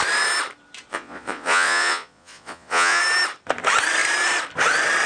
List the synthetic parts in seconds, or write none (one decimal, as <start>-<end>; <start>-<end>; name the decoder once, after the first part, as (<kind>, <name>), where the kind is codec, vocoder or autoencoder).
0.9-3.0 (vocoder, Vocos)